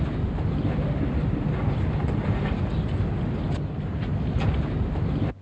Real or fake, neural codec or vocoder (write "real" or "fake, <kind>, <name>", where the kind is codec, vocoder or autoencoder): real